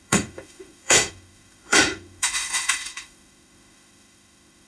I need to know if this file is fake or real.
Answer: fake